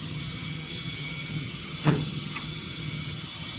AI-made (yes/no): yes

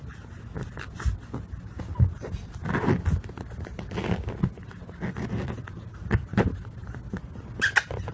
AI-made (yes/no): no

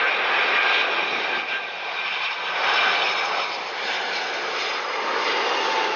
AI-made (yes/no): no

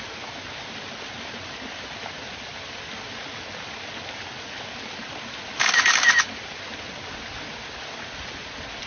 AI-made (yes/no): no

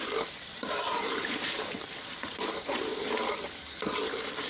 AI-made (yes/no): yes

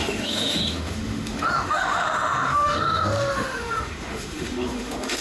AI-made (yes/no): yes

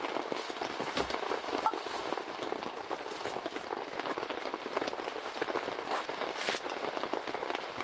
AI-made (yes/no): no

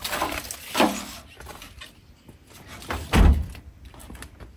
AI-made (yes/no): no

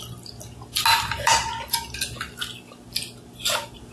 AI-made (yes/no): no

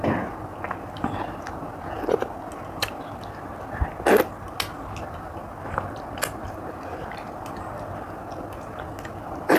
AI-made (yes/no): no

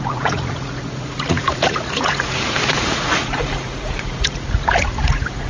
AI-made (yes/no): yes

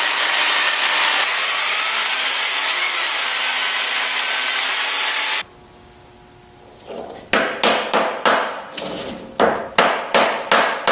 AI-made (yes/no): no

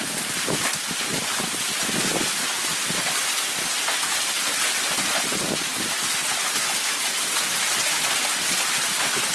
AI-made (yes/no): no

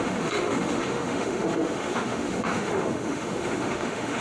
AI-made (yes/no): yes